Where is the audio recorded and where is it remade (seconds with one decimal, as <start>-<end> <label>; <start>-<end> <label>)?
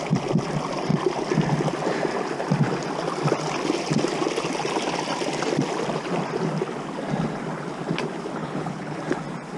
0.0-8.4 recorded; 8.4-9.0 remade; 9.0-9.6 recorded